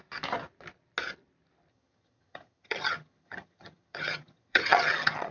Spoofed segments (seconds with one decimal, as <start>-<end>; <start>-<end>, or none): 1.7-5.3